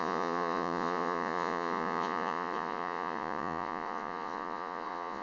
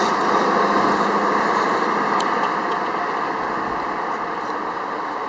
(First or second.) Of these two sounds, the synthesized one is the first